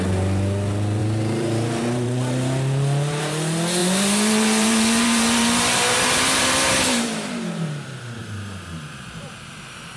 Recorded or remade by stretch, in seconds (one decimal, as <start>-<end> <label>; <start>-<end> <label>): 0.0-1.0 recorded; 1.0-3.2 remade; 3.2-3.8 recorded; 3.8-7.7 remade; 7.7-8.2 recorded; 8.2-10.0 remade